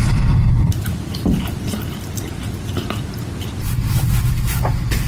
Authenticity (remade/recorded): remade